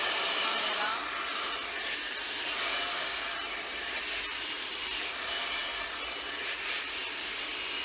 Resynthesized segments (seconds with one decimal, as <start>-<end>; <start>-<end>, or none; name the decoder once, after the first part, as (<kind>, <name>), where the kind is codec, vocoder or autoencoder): 0.0-1.0 (vocoder, BigVGAN v2); 2.8-7.8